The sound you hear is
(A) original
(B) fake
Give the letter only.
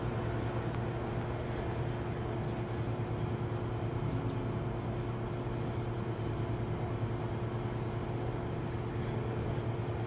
A